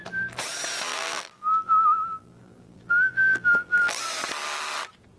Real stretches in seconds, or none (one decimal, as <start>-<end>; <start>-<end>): 0.0-0.9; 4.0-5.2